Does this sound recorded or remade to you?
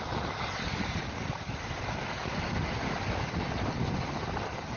recorded